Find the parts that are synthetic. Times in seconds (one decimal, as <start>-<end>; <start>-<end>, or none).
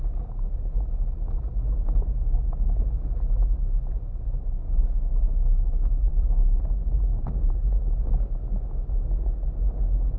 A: 6.1-6.9